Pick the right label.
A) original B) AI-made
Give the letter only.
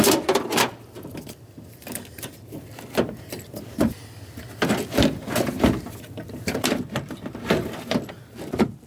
B